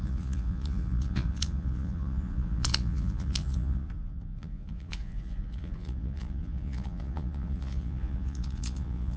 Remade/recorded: remade